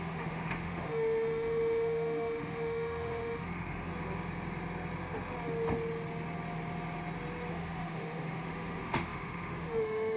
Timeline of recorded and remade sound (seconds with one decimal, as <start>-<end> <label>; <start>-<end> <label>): 0.0-3.9 remade; 3.9-7.5 recorded; 7.5-10.2 remade